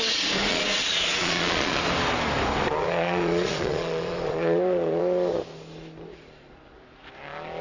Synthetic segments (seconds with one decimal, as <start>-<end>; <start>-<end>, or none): 0.5-1.8; 2.8-5.0